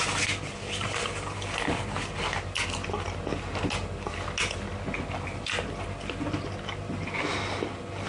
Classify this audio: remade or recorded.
recorded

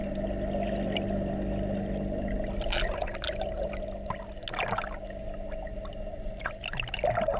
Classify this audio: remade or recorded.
recorded